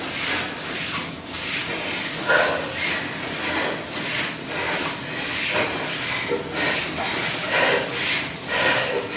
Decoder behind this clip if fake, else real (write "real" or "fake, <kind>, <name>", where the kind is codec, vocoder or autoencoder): real